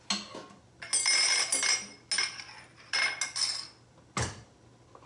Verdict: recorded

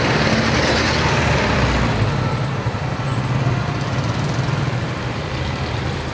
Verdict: remade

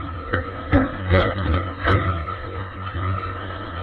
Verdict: remade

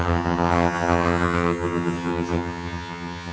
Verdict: remade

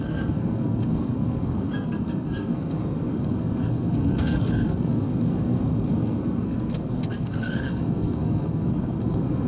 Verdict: remade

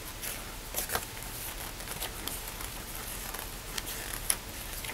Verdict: recorded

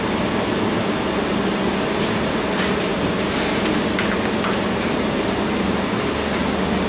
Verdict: recorded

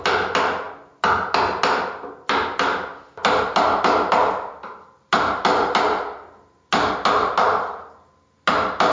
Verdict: recorded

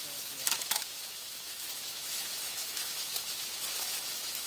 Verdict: remade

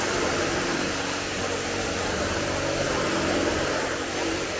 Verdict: remade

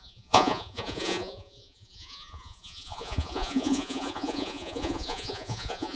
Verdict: remade